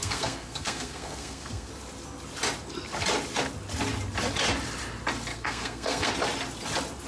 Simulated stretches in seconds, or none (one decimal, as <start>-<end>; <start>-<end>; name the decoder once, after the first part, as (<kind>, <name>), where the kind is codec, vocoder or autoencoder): 0.0-1.7 (codec, SNAC); 5.3-6.1